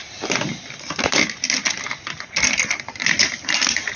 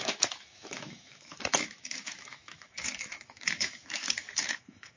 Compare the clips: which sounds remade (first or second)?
second